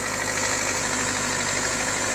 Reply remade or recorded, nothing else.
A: remade